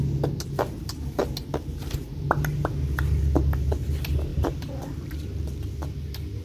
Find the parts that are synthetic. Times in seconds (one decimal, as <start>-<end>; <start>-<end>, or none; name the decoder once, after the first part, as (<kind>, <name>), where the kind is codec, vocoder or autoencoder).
none